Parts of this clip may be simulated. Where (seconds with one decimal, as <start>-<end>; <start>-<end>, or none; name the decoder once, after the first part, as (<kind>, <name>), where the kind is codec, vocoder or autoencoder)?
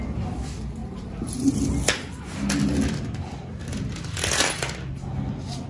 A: 0.8-1.3 (vocoder, BigVGAN v2)